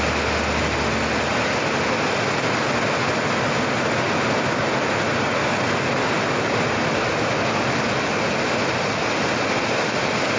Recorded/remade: recorded